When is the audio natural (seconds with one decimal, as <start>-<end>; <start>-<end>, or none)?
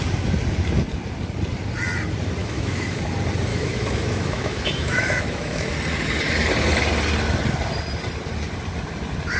0.0-2.4; 3.0-3.5; 5.7-9.4